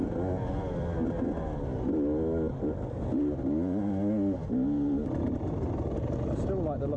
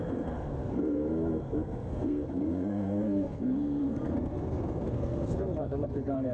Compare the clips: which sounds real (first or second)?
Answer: first